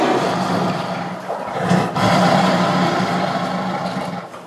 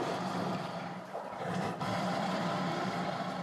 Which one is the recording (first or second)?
first